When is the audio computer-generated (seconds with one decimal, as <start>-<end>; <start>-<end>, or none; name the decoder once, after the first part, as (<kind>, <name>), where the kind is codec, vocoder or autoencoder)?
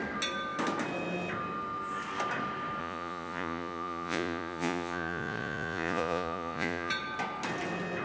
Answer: 2.8-6.9 (vocoder, Vocos)